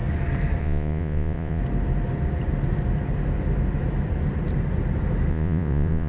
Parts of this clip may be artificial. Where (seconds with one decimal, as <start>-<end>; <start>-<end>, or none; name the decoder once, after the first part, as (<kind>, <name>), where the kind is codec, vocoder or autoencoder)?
0.6-1.6 (vocoder, Vocos); 5.3-6.1

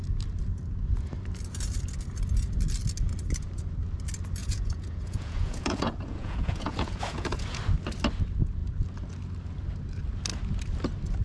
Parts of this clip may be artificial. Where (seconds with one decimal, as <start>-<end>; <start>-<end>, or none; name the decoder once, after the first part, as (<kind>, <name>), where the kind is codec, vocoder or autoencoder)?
4.4-7.6 (vocoder, Vocos)

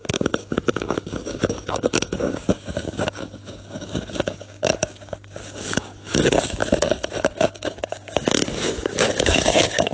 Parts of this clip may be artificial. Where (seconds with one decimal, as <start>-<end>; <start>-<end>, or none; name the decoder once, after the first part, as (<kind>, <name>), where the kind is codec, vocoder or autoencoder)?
0.0-6.6 (codec, DAC); 7.2-9.9